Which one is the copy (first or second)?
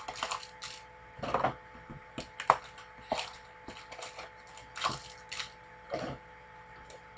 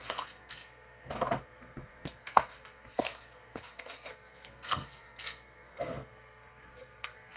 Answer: second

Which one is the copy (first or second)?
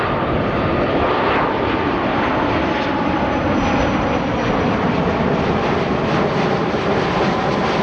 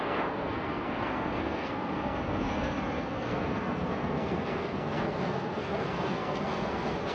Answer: second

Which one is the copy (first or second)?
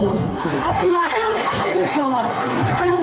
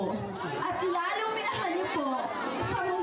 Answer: first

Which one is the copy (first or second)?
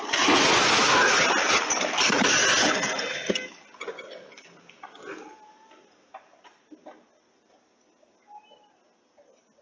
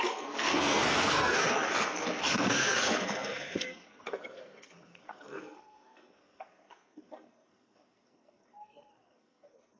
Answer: second